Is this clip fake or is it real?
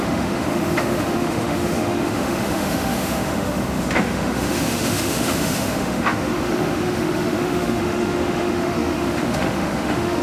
fake